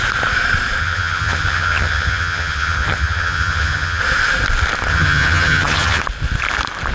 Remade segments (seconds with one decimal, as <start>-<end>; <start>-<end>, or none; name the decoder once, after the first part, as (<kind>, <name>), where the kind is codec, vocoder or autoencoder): 0.8-4.0 (vocoder, HiFi-GAN); 4.9-6.0